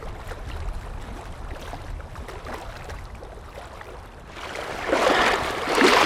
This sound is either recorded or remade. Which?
recorded